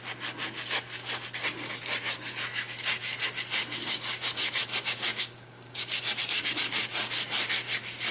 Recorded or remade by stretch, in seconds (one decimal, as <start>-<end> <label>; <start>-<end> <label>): 0.0-3.8 recorded; 3.8-4.3 remade; 4.3-5.1 recorded; 5.1-6.0 remade; 6.0-8.1 recorded